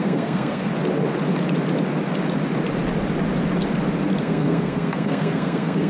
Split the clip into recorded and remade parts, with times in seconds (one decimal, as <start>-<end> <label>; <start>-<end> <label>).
0.0-0.7 remade; 0.7-4.2 recorded; 4.2-5.9 remade